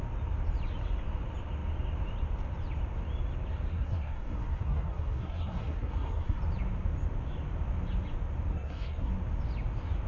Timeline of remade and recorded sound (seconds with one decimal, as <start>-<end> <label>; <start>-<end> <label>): 0.0-3.7 recorded; 3.7-6.4 remade; 6.4-8.5 recorded; 8.5-9.1 remade; 9.1-10.1 recorded